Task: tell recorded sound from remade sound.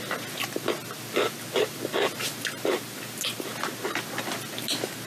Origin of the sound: recorded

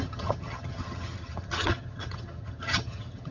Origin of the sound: remade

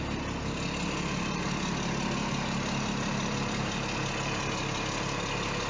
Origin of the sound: recorded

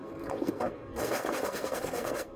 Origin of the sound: remade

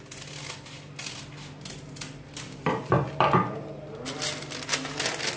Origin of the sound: recorded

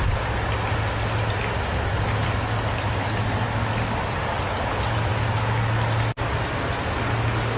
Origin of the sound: recorded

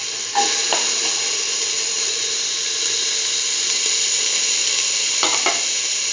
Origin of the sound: recorded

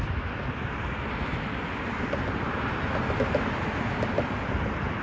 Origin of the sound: recorded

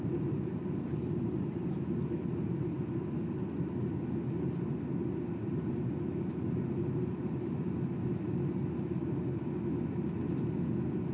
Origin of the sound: recorded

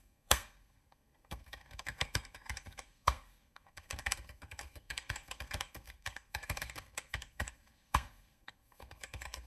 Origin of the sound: remade